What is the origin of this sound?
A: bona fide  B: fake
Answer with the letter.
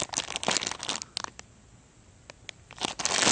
A